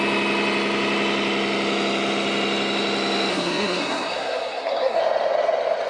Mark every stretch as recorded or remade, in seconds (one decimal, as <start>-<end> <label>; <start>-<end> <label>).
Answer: 0.0-3.3 recorded; 3.3-5.0 remade; 5.0-5.9 recorded